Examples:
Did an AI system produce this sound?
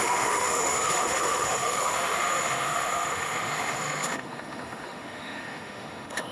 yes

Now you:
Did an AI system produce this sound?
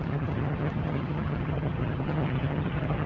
yes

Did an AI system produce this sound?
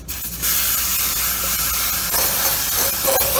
no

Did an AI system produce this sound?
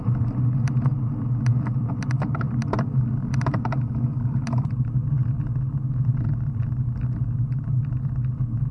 no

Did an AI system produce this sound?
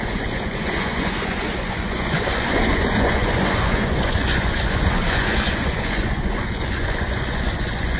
yes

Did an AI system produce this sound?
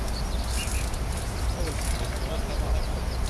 no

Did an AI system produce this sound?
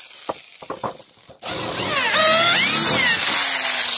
no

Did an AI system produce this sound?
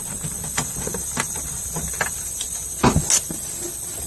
no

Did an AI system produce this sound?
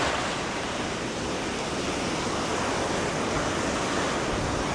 no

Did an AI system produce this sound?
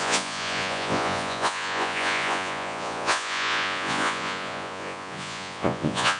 yes